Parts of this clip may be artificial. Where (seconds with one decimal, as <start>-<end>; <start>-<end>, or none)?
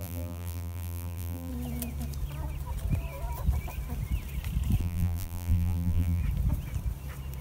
0.0-1.5; 4.8-6.2